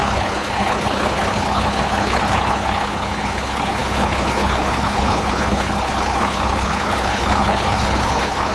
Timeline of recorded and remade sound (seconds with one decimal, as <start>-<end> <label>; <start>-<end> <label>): 0.0-8.5 remade

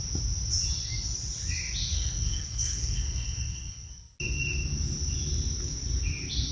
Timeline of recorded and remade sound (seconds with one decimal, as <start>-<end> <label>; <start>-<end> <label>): 0.0-1.9 recorded; 1.9-3.9 remade; 3.9-6.5 recorded

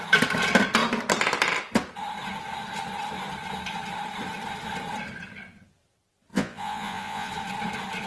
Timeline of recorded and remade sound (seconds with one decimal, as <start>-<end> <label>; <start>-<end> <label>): 0.0-6.3 recorded; 6.3-7.3 remade; 7.3-8.1 recorded